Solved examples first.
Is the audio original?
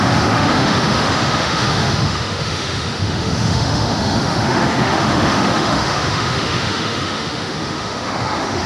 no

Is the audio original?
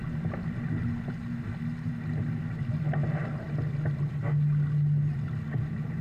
yes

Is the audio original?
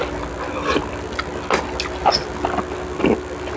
yes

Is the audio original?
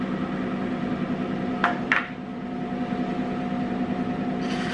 yes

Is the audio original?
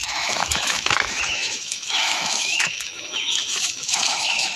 no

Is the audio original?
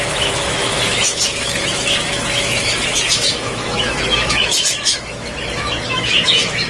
no